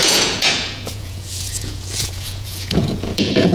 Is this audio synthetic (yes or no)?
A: yes